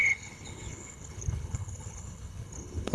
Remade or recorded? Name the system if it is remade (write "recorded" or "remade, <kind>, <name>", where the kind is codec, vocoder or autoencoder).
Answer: remade, codec, HILCodec